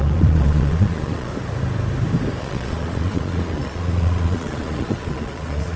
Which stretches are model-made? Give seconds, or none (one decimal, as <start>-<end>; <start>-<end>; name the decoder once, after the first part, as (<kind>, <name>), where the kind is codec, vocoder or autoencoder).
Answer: 0.0-1.3 (vocoder, Vocos); 2.4-5.8